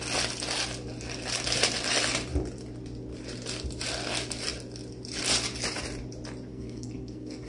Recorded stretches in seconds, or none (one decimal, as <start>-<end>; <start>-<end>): 0.0-6.5